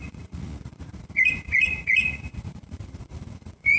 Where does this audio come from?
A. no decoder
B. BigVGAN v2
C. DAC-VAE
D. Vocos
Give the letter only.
D